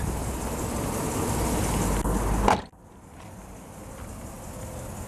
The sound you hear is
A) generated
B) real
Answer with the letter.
B